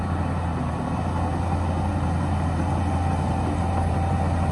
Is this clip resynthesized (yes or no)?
no